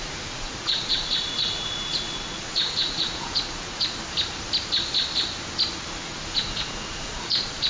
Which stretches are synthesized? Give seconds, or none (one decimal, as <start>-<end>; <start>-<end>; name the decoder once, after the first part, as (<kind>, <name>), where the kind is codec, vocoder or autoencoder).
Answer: 0.0-4.0 (vocoder, Vocos); 5.9-7.7